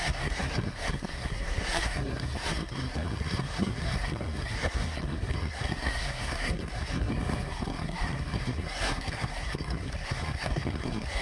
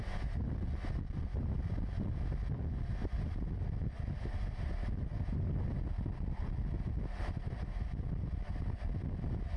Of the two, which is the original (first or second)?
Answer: second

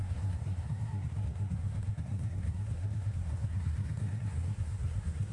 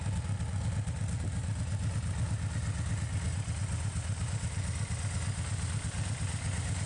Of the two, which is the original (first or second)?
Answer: second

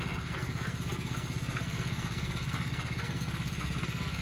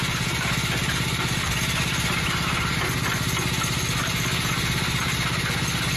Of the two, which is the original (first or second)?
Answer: second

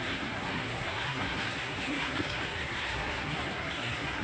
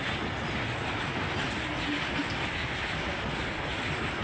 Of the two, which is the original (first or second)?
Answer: second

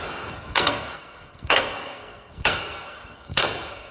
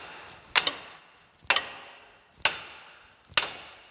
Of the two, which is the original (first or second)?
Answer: second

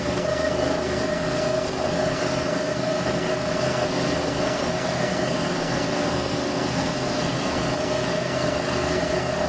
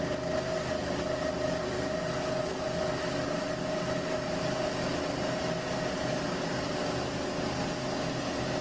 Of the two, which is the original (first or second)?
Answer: second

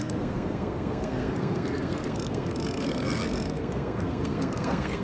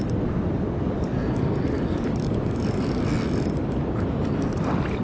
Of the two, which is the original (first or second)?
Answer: second